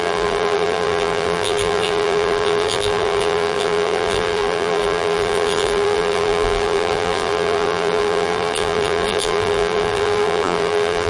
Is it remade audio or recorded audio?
remade